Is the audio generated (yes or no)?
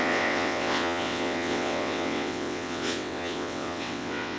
yes